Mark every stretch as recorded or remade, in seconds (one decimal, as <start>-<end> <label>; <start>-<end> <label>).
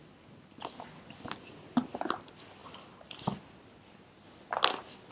0.0-5.1 recorded